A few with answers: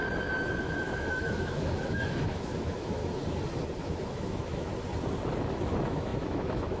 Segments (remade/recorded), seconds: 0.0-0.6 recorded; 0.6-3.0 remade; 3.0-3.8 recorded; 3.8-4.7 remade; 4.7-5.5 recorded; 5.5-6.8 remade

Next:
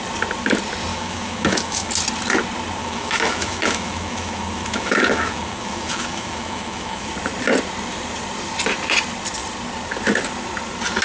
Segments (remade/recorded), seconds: 0.0-0.9 recorded; 0.9-1.9 remade; 1.9-2.8 recorded; 2.8-7.1 remade; 7.1-11.0 recorded

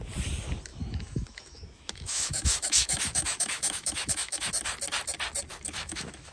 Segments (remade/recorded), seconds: 0.0-0.7 recorded; 0.7-4.5 remade; 4.5-5.5 recorded; 5.5-6.3 remade

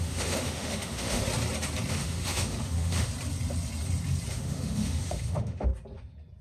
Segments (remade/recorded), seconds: 0.0-1.2 remade; 1.2-1.9 recorded; 1.9-3.1 remade; 3.1-4.3 recorded; 4.3-5.7 remade; 5.7-6.4 recorded

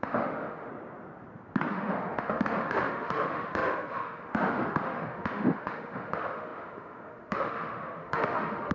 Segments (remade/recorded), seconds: 0.0-0.7 remade; 0.7-1.7 recorded; 1.7-8.7 remade

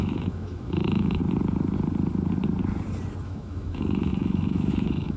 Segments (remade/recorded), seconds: 0.0-1.2 remade; 1.2-3.2 recorded; 3.2-5.2 remade